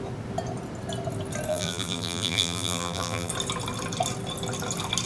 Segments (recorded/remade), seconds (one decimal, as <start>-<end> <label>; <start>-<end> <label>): 0.0-1.5 recorded; 1.5-3.3 remade; 3.3-5.1 recorded